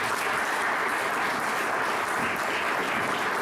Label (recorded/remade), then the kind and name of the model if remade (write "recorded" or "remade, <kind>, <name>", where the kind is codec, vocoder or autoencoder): recorded